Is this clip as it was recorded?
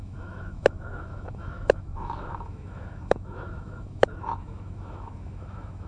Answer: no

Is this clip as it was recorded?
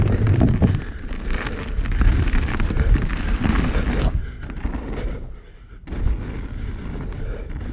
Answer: yes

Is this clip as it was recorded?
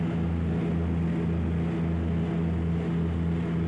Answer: yes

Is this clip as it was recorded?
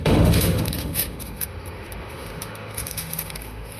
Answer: no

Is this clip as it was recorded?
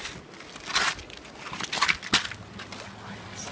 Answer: yes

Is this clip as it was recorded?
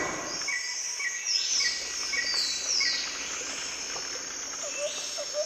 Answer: yes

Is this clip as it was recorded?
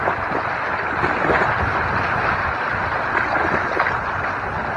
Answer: yes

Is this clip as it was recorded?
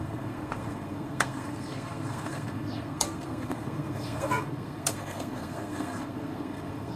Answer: no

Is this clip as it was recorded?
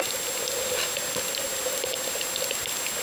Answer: yes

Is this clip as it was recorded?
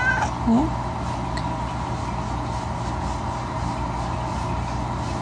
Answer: yes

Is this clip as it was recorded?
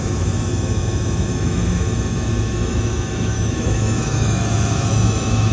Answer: no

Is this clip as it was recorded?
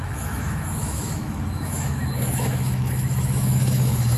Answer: no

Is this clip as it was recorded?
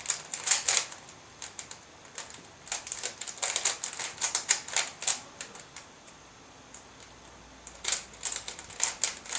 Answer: yes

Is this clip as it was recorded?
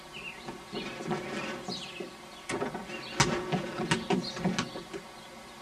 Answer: yes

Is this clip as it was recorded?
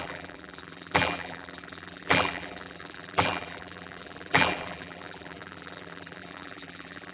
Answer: no